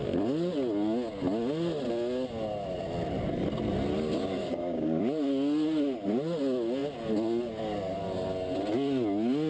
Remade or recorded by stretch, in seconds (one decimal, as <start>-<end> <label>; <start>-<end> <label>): 0.0-4.4 recorded; 4.4-5.0 remade; 5.0-9.5 recorded